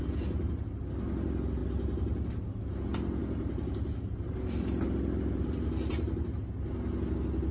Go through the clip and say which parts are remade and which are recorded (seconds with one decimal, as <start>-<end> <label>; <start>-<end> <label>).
0.0-1.6 recorded; 1.6-2.6 remade; 2.6-3.2 recorded; 3.2-6.2 remade; 6.2-7.5 recorded